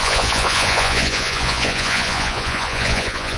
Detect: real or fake fake